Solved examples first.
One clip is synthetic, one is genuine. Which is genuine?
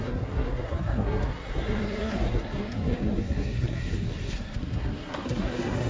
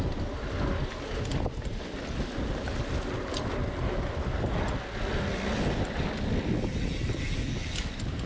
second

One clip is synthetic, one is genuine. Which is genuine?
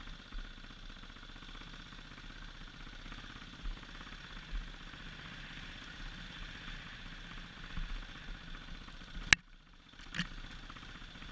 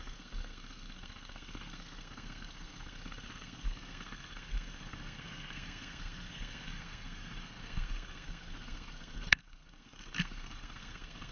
first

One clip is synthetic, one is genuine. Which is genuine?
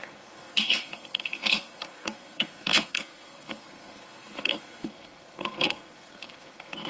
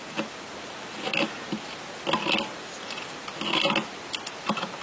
second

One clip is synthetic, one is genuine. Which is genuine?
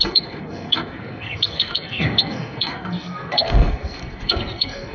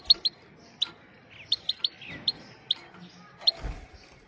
second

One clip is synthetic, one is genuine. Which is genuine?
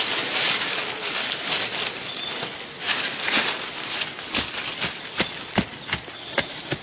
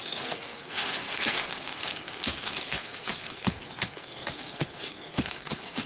first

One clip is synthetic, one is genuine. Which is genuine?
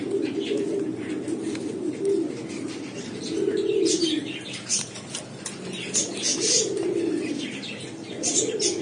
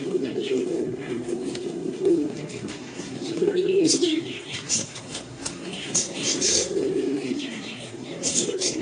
first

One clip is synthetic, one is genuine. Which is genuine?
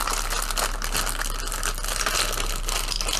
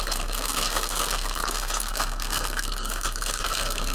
first